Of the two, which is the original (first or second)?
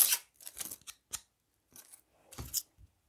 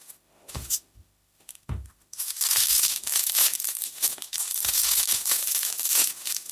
first